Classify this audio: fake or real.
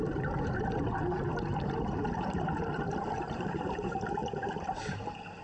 fake